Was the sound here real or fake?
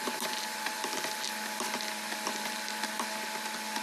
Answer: real